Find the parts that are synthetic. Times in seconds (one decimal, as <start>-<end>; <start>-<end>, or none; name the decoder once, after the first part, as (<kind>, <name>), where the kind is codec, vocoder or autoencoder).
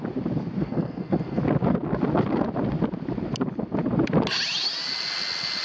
0.6-1.4 (codec, SNAC)